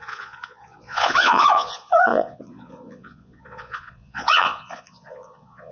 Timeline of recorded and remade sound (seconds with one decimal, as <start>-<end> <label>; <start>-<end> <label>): 0.0-5.7 remade